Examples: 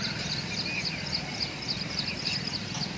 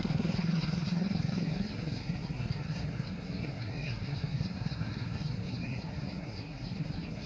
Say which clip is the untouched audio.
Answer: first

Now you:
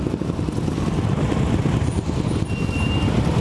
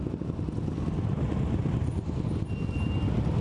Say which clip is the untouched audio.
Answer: second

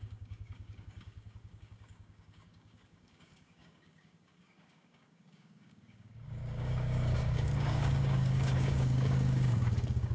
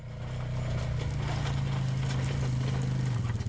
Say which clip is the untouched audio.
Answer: second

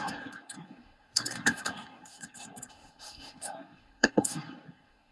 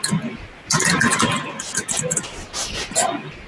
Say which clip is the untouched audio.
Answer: second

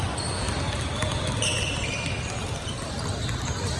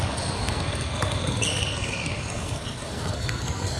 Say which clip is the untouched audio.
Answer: first